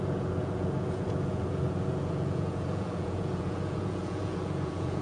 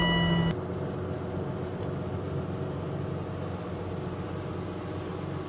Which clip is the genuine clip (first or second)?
second